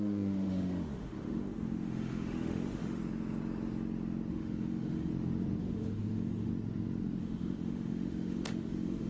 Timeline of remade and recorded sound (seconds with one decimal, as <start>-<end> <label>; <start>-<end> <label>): 0.0-3.0 remade; 3.0-4.3 recorded; 4.3-5.1 remade; 5.1-5.6 recorded; 5.6-6.5 remade; 6.5-7.2 recorded; 7.2-9.1 remade

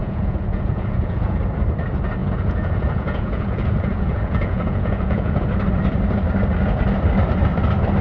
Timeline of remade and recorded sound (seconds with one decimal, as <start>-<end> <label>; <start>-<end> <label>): 0.0-1.4 remade; 1.4-2.2 recorded; 2.2-5.4 remade; 5.4-8.0 recorded

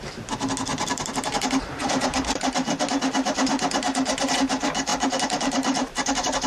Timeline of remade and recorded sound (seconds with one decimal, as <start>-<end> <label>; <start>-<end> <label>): 0.0-0.7 recorded; 0.7-2.8 remade; 2.8-4.9 recorded; 4.9-6.5 remade

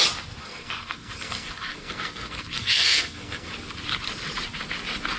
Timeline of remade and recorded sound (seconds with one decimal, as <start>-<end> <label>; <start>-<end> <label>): 0.0-0.4 recorded; 0.4-3.5 remade; 3.5-5.2 recorded

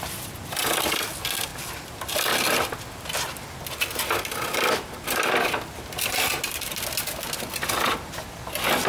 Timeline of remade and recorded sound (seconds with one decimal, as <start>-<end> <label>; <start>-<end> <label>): 0.0-8.9 recorded

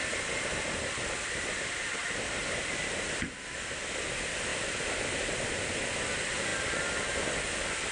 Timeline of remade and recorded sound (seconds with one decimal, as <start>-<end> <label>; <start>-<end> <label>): 0.0-7.9 recorded